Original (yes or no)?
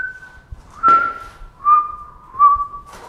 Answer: no